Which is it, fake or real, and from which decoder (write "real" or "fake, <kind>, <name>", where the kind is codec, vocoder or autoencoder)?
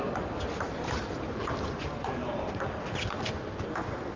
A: real